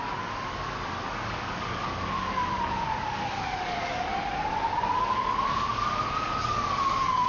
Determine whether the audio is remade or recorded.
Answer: remade